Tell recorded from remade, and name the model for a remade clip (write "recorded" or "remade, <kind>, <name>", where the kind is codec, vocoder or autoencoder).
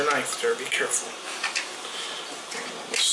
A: recorded